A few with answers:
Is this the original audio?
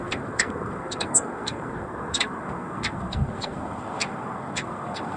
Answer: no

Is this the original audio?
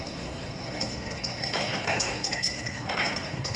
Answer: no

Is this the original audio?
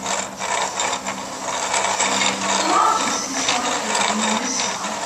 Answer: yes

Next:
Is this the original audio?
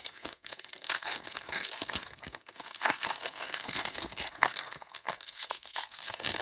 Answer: no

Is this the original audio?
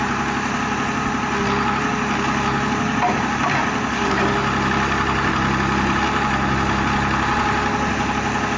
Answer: yes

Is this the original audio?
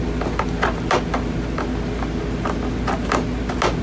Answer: yes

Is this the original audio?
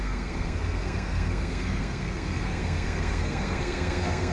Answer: no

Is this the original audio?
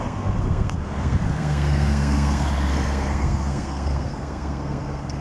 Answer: no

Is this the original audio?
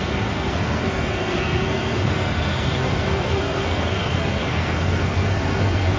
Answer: no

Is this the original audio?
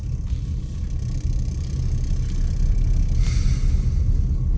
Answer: yes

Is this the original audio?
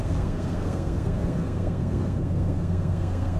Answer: no